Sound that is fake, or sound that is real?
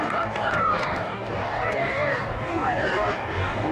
fake